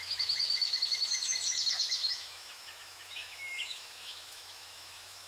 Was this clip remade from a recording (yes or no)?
yes